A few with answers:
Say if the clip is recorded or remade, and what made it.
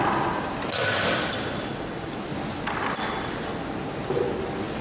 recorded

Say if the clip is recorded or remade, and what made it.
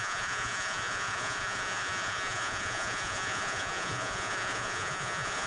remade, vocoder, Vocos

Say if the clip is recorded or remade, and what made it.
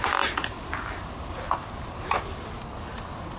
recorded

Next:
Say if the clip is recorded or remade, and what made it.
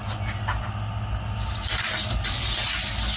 recorded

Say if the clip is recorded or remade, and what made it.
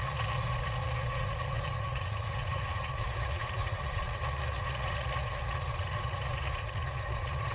remade, vocoder, Vocos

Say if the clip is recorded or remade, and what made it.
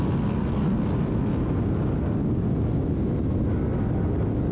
recorded